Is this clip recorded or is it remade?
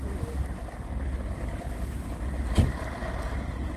recorded